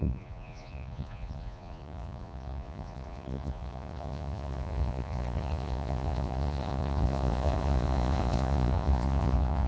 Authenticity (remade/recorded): remade